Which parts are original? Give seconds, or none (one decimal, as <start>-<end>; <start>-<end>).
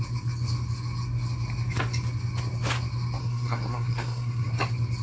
0.0-3.2; 4.5-5.0